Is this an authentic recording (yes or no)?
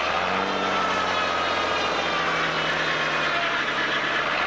yes